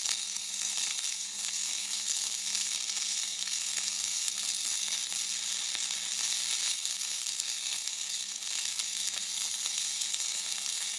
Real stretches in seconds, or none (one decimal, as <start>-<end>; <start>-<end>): 5.0-6.6